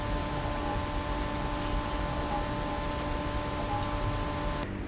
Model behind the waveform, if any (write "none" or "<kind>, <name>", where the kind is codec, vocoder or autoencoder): none